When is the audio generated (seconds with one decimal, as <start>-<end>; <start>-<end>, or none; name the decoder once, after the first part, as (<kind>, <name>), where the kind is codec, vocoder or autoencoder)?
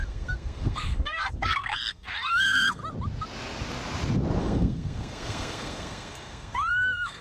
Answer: 0.0-2.8 (codec, SNAC); 4.4-7.2